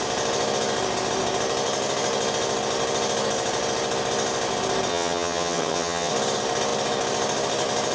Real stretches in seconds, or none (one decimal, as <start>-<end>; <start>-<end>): 0.0-4.9; 6.1-7.9